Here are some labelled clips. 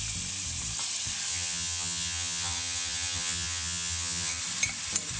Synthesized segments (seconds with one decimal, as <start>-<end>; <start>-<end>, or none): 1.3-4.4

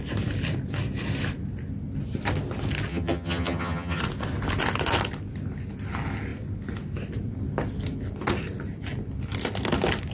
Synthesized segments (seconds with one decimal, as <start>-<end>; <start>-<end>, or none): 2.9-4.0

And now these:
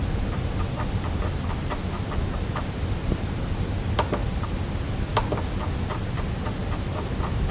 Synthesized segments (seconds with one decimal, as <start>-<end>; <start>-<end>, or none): none

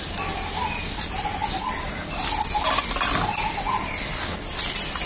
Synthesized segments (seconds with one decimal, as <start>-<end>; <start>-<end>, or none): none

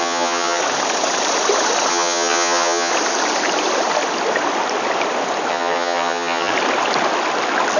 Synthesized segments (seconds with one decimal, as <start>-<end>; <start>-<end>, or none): 0.0-0.6; 1.9-2.9; 5.5-6.5